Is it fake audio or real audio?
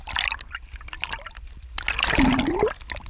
real